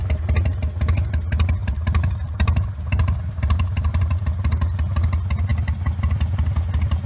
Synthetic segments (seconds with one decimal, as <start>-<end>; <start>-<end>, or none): 1.6-4.2